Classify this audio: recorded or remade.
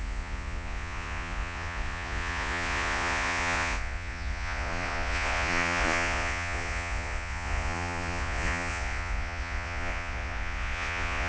remade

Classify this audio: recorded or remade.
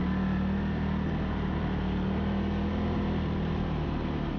recorded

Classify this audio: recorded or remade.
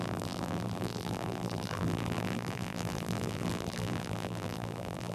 remade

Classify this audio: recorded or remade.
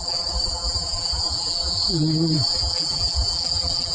remade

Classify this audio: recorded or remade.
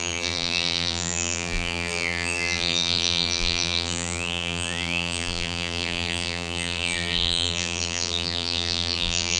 remade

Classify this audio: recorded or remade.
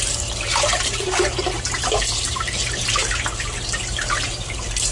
remade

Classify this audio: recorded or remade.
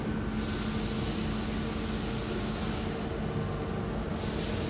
recorded